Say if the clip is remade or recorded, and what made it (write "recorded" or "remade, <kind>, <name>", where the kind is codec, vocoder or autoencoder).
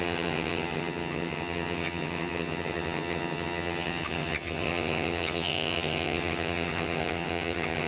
remade, vocoder, HiFi-GAN